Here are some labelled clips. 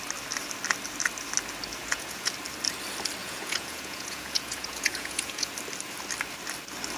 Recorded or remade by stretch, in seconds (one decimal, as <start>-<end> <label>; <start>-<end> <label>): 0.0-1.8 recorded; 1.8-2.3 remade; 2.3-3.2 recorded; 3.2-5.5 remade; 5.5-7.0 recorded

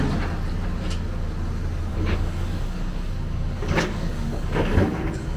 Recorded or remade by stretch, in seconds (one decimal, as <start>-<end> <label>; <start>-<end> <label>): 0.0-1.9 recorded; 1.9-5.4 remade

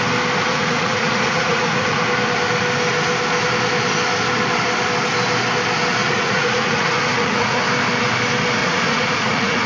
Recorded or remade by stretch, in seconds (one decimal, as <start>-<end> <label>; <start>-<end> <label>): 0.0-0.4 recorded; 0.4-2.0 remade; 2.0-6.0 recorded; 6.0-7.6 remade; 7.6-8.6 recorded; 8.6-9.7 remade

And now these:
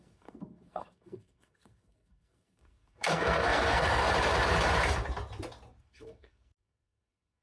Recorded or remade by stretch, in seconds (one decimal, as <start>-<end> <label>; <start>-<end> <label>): 0.0-4.0 remade; 4.0-5.8 recorded; 5.8-7.4 remade

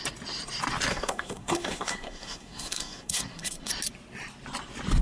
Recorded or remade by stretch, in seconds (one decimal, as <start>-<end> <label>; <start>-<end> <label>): 0.0-0.9 recorded; 0.9-3.7 remade; 3.7-5.0 recorded

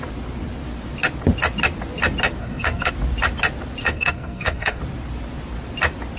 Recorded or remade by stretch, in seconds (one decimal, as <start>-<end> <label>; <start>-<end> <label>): 0.0-2.4 recorded; 2.4-2.9 remade; 2.9-3.8 recorded; 3.8-4.8 remade; 4.8-6.2 recorded

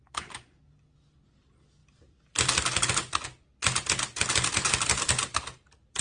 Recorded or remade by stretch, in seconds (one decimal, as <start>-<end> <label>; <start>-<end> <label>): 0.0-6.0 recorded